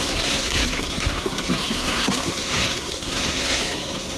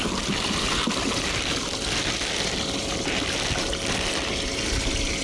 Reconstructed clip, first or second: first